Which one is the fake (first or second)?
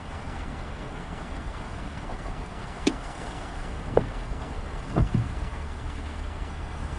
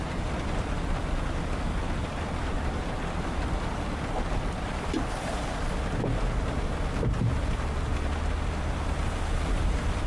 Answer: first